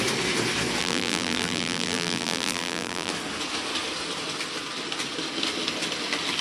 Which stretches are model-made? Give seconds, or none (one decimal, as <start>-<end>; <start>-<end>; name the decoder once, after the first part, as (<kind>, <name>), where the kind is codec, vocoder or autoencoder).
0.8-3.1 (vocoder, BigVGAN v2)